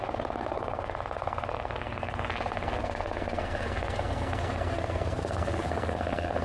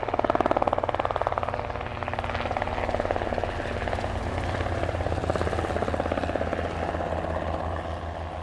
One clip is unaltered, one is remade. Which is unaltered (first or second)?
second